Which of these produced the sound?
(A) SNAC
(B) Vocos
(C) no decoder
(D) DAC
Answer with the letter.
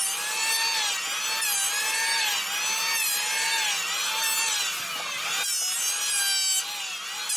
C